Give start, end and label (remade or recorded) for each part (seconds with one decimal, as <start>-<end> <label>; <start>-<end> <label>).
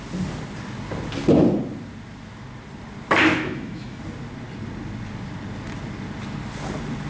0.0-3.3 recorded; 3.3-4.0 remade; 4.0-7.1 recorded